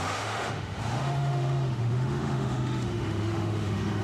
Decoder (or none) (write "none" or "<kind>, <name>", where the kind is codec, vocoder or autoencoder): autoencoder, DAC-VAE